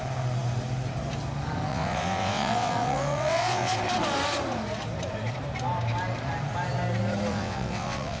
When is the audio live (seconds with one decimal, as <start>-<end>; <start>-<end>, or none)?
0.0-1.7; 3.7-7.3